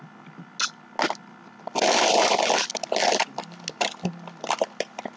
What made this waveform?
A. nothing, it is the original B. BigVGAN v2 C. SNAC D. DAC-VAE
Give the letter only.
A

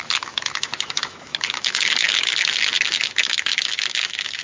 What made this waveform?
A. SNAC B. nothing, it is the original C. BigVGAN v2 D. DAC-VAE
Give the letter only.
D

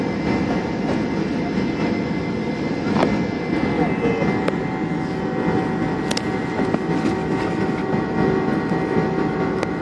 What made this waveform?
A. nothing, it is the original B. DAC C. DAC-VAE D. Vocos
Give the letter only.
A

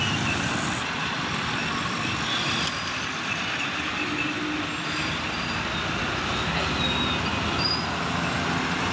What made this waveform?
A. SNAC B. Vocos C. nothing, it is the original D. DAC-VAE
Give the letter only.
C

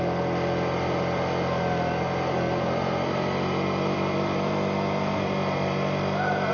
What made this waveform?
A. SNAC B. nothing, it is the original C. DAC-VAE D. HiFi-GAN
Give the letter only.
B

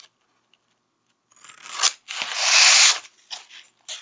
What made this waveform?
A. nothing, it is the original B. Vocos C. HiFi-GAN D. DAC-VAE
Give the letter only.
A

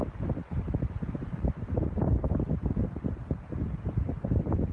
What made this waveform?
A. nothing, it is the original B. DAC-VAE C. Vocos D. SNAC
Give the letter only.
A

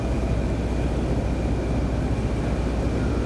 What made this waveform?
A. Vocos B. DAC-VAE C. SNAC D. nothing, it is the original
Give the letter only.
D